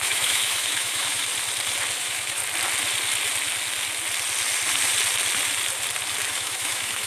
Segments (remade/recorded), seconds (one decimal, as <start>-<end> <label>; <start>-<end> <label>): 0.0-1.3 remade; 1.3-2.0 recorded; 2.0-2.4 remade; 2.4-6.3 recorded; 6.3-7.1 remade